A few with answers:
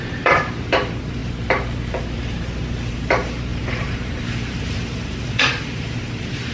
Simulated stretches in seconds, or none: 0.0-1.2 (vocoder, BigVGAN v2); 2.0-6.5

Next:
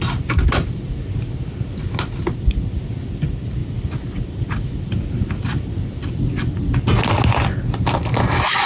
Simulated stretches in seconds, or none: none

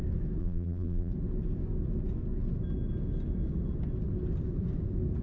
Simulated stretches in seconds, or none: 0.4-1.1 (vocoder, BigVGAN v2)

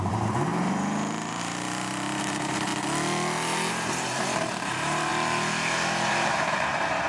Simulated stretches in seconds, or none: 0.0-2.7 (vocoder, BigVGAN v2); 3.7-5.1; 6.1-7.1

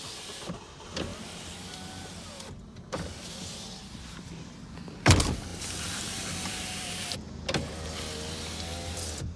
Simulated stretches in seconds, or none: 1.1-3.3 (vocoder, BigVGAN v2); 5.5-7.2

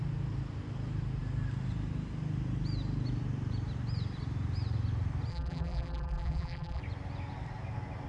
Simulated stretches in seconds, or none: 5.3-6.8 (vocoder, BigVGAN v2)

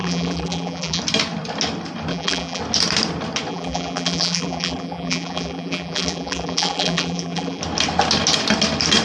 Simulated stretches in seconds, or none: 0.0-1.0 (vocoder, BigVGAN v2); 2.1-2.6; 3.5-7.6

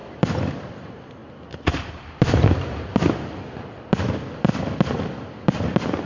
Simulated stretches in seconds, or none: 0.0-0.7 (vocoder, BigVGAN v2)